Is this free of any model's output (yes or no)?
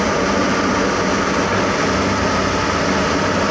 yes